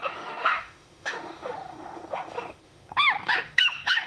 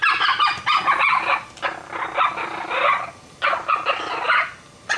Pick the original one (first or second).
second